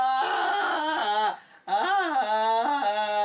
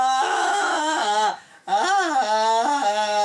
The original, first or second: first